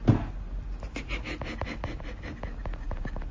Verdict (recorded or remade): recorded